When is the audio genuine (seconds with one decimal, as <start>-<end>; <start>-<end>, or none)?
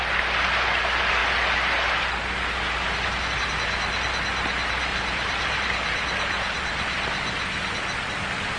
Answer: 0.0-4.9; 7.7-8.6